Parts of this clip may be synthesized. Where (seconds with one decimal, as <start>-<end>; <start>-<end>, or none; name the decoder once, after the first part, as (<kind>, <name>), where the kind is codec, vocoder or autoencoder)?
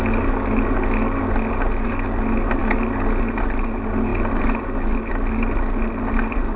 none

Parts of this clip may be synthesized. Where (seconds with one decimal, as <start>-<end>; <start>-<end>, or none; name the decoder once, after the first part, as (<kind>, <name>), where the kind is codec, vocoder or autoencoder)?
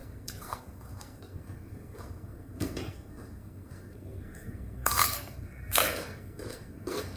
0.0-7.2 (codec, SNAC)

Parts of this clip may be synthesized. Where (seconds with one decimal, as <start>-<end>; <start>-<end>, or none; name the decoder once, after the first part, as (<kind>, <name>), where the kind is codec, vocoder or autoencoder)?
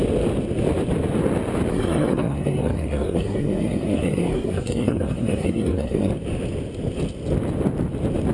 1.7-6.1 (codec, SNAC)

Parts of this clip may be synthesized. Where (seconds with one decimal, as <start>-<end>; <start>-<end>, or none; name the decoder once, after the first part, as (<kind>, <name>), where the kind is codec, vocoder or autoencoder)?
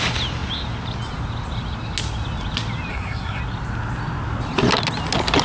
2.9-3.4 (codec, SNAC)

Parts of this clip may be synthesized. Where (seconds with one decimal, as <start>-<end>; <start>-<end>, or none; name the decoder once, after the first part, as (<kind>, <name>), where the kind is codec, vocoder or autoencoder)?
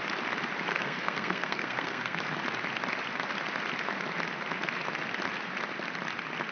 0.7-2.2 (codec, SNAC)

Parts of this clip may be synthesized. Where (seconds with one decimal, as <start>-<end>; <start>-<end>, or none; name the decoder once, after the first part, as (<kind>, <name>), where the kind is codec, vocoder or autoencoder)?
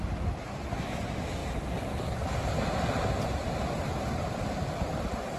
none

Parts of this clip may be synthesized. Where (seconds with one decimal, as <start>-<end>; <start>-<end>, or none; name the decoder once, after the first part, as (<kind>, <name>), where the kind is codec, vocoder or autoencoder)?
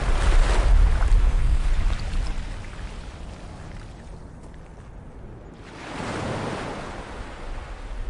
1.2-1.7 (codec, SNAC)